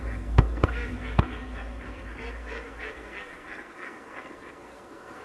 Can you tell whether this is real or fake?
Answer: fake